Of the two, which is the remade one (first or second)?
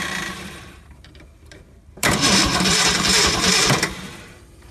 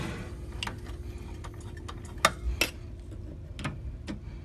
first